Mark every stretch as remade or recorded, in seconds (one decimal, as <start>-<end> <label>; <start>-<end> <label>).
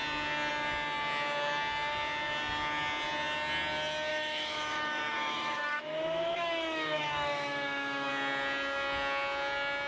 0.0-4.1 recorded; 4.1-8.1 remade; 8.1-9.9 recorded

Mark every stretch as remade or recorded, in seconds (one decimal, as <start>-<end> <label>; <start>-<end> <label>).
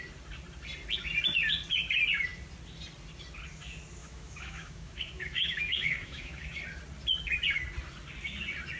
0.0-4.0 recorded; 4.0-6.6 remade; 6.6-8.8 recorded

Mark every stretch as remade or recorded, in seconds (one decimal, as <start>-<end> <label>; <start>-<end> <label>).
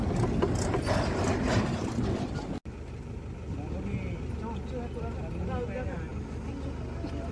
0.0-7.3 recorded